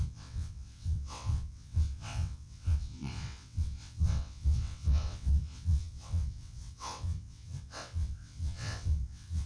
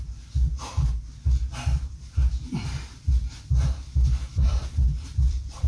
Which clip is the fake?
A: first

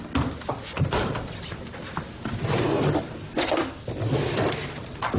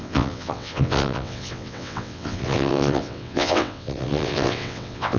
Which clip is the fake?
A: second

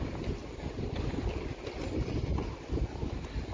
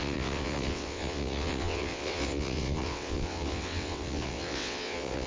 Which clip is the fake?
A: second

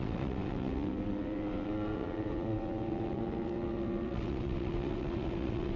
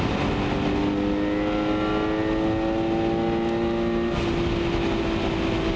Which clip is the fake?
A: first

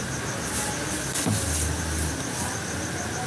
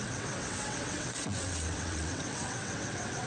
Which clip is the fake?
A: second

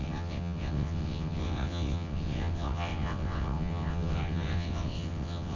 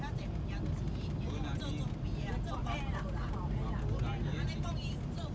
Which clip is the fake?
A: first